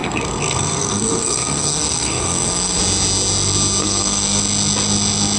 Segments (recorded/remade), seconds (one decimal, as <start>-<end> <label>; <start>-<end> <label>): 0.0-2.8 remade; 2.8-3.8 recorded; 3.8-4.4 remade; 4.4-5.4 recorded